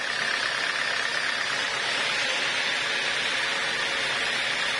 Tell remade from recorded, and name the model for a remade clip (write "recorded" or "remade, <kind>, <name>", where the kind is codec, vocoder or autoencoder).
recorded